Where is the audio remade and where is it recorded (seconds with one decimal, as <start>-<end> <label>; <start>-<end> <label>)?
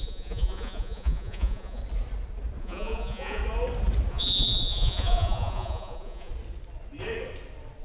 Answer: 0.0-1.8 remade; 1.8-2.6 recorded; 2.6-3.4 remade; 3.4-4.1 recorded; 4.1-6.3 remade; 6.3-7.8 recorded